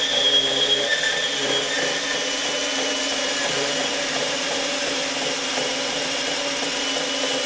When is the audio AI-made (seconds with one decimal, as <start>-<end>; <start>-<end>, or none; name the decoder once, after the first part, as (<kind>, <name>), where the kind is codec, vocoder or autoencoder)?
3.9-4.9 (vocoder, BigVGAN v2)